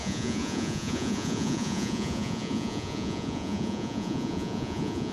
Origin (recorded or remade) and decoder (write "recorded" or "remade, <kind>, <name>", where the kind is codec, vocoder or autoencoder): remade, vocoder, Vocos